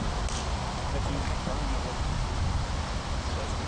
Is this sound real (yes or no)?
yes